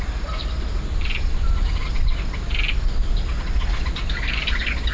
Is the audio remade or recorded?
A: recorded